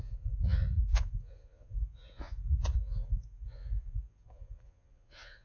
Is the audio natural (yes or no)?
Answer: no